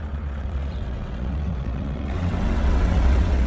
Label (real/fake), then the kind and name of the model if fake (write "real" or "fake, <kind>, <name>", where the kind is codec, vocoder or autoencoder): fake, vocoder, WaveNeXt